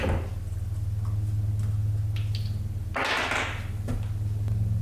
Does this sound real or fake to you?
real